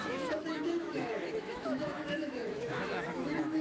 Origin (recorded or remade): remade